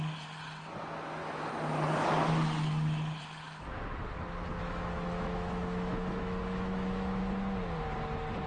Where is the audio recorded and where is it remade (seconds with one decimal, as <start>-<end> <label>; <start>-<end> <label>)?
0.0-4.6 recorded; 4.6-7.2 remade; 7.2-8.5 recorded